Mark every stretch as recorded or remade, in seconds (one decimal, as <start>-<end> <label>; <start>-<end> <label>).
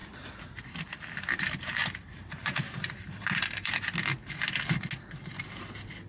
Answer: 0.0-1.8 recorded; 1.8-3.7 remade; 3.7-6.1 recorded